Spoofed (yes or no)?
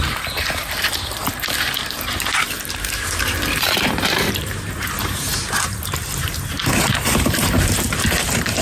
yes